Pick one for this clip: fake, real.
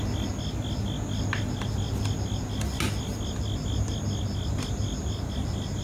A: real